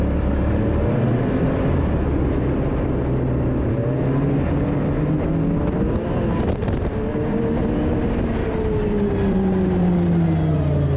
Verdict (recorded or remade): recorded